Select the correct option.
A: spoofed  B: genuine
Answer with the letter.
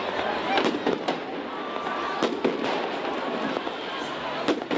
B